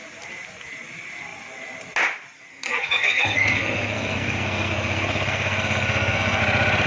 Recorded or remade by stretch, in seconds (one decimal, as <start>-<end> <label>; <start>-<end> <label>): 0.0-2.5 recorded; 2.5-6.4 remade; 6.4-6.9 recorded